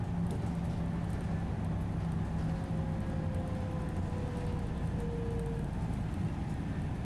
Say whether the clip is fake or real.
real